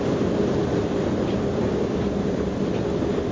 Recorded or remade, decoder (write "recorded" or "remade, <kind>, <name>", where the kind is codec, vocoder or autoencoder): recorded